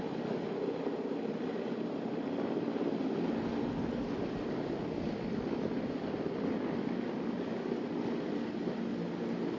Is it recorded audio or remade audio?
recorded